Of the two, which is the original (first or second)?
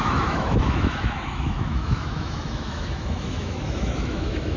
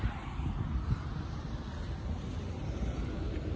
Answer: second